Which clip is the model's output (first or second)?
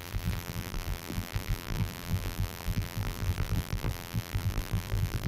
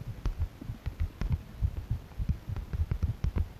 first